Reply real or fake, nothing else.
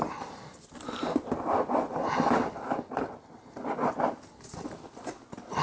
real